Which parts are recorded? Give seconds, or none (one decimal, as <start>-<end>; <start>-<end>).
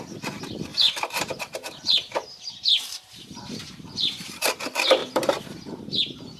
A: 0.0-0.7; 4.5-5.0